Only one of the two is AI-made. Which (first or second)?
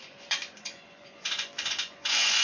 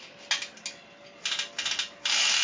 first